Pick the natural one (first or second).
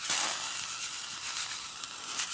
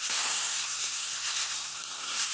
first